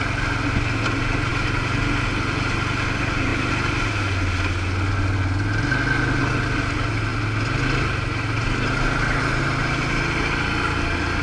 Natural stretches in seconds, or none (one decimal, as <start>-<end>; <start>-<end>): 0.0-11.2